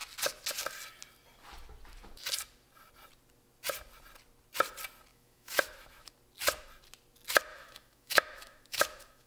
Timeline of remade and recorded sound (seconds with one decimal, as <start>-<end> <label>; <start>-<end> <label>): 0.0-5.1 recorded; 5.1-6.1 remade; 6.1-7.5 recorded; 7.5-9.3 remade